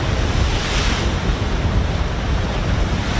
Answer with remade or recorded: recorded